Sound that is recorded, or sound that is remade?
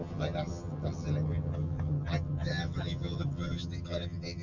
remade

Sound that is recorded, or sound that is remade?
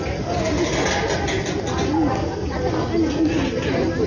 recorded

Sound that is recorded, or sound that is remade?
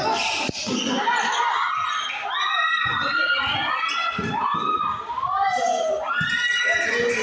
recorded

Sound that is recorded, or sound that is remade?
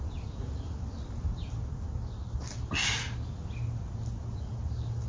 recorded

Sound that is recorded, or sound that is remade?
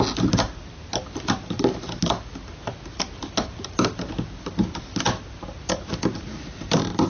recorded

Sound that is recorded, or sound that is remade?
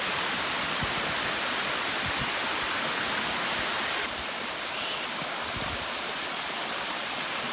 recorded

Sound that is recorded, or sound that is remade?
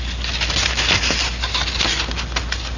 recorded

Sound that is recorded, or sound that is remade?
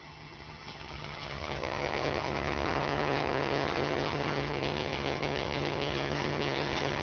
remade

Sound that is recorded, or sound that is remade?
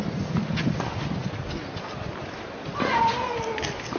recorded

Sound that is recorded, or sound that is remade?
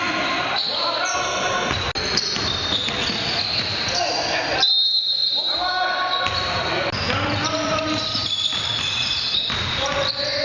recorded